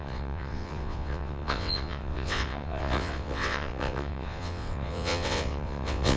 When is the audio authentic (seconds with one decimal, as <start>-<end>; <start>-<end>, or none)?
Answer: none